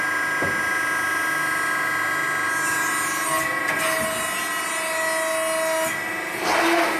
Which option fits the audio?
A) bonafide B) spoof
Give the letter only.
A